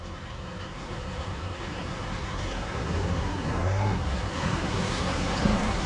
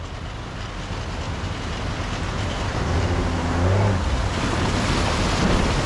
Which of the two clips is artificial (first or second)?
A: first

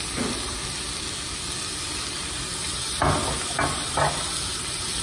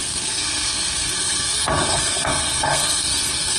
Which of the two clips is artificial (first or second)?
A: second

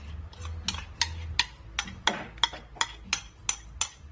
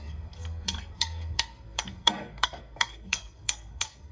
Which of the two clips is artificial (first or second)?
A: second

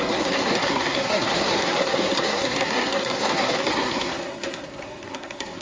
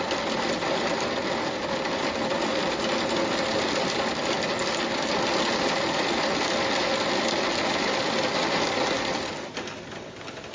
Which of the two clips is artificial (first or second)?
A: first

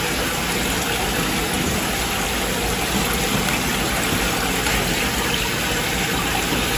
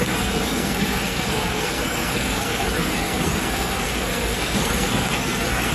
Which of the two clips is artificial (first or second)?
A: second